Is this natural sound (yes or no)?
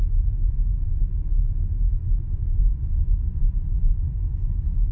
yes